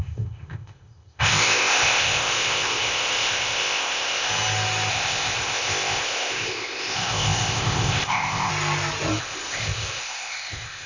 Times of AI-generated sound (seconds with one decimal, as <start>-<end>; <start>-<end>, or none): 0.0-4.3; 4.9-8.5; 9.2-10.9